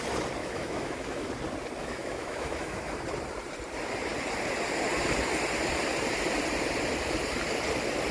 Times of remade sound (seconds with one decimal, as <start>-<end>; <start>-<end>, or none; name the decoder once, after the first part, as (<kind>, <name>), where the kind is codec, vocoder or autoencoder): 0.4-1.3 (autoencoder, DAC-VAE); 1.8-2.9